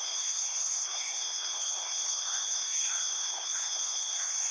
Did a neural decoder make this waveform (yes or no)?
yes